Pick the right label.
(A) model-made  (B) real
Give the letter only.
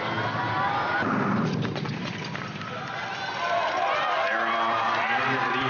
B